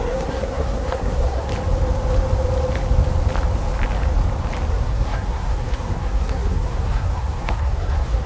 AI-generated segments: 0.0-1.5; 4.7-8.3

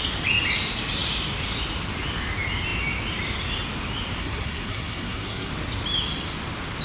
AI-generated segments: 4.2-5.5

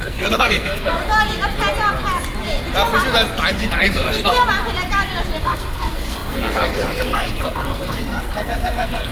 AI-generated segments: 0.0-1.0; 3.5-4.4; 5.4-9.1

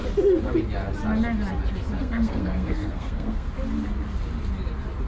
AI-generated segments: 2.0-3.5